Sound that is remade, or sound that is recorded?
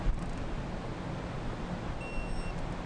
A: recorded